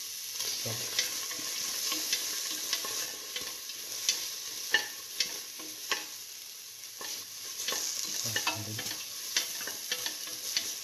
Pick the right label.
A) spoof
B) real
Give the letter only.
B